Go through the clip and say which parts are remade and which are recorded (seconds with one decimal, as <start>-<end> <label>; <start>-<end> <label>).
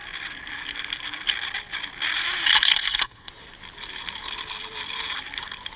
0.0-2.7 recorded; 2.7-3.3 remade; 3.3-5.8 recorded